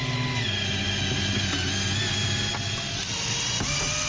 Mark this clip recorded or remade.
recorded